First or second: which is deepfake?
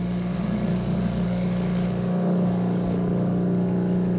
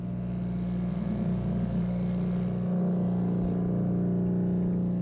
first